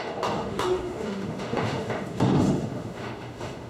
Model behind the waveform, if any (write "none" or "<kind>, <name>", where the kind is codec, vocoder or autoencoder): autoencoder, DAC-VAE